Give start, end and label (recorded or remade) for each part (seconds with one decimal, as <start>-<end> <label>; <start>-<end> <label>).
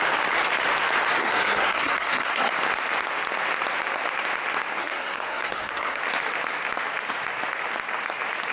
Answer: 0.0-1.1 recorded; 1.1-2.5 remade; 2.5-4.8 recorded; 4.8-6.0 remade; 6.0-8.5 recorded